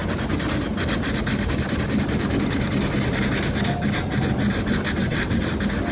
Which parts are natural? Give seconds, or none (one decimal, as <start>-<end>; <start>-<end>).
0.0-5.0; 5.5-5.9